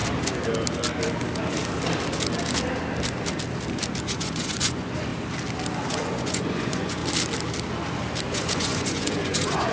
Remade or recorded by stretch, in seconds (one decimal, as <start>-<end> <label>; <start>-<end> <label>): 0.0-4.0 recorded; 4.0-5.1 remade; 5.1-5.9 recorded; 5.9-7.0 remade; 7.0-8.3 recorded; 8.3-9.7 remade